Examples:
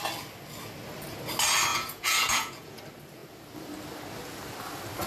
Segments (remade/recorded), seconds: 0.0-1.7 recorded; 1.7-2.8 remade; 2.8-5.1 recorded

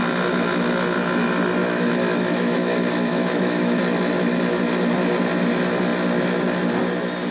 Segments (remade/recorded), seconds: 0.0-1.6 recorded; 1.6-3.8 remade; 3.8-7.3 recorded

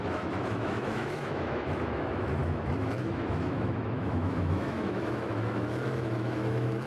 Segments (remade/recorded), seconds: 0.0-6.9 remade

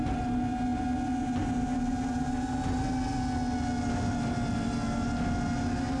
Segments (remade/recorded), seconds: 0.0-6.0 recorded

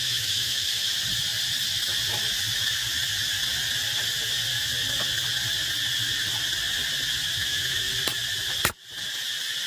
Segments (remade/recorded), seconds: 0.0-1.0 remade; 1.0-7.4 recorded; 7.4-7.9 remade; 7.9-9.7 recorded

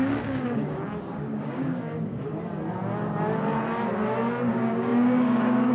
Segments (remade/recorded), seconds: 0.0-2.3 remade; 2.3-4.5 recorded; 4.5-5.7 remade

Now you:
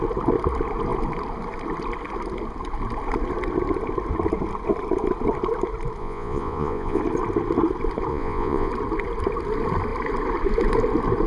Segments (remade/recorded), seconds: 0.0-6.0 recorded; 6.0-7.0 remade; 7.0-8.1 recorded; 8.1-8.7 remade; 8.7-11.3 recorded